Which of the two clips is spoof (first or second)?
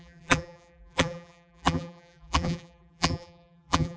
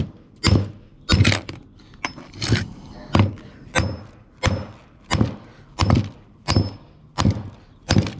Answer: first